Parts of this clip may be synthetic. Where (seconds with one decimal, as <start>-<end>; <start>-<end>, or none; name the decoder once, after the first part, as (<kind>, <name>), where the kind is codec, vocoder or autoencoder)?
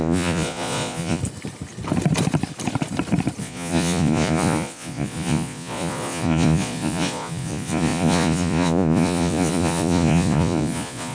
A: 0.0-1.2 (vocoder, Vocos); 3.4-11.1